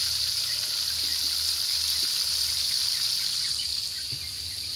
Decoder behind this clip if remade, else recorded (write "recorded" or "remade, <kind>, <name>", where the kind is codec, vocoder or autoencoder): recorded